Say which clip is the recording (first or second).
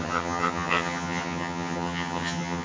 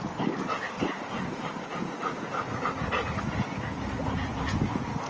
second